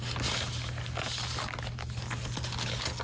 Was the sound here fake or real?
real